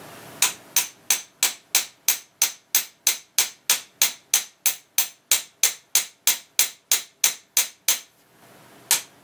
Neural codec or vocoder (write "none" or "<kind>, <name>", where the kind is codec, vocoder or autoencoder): none